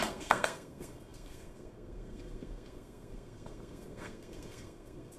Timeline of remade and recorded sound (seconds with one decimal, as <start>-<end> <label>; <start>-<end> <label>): 0.0-5.2 remade

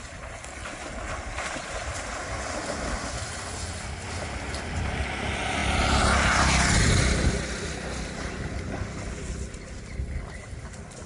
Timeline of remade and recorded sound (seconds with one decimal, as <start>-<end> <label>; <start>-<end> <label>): 0.0-11.1 recorded